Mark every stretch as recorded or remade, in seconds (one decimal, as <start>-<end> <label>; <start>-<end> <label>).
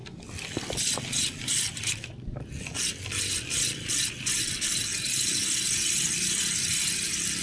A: 0.0-7.4 recorded